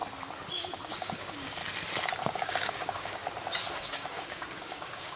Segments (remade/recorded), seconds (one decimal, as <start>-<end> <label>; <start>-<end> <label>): 0.0-0.9 recorded; 0.9-1.6 remade; 1.6-2.2 recorded; 2.2-3.2 remade; 3.2-3.7 recorded; 3.7-5.2 remade